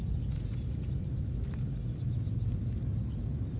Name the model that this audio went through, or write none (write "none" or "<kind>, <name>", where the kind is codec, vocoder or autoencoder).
none